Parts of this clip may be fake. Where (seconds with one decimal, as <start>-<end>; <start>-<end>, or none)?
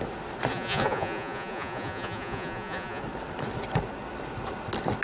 0.5-3.0